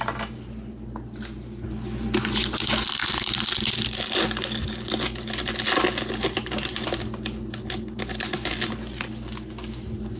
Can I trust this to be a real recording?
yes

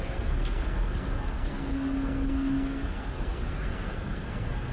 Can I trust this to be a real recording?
no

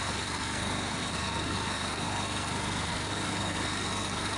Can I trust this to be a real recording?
no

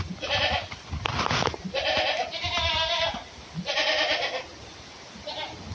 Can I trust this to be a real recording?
yes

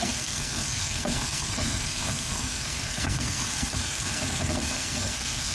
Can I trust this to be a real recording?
no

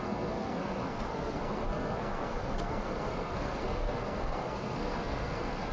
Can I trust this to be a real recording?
no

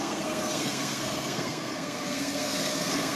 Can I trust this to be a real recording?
no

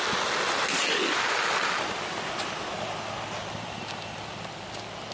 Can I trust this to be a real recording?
yes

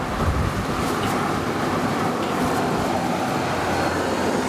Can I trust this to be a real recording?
yes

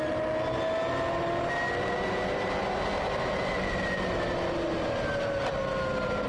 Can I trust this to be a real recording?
yes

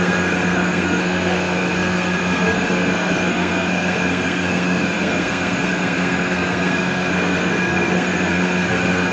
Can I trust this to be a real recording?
no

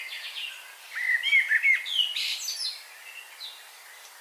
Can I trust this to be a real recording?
yes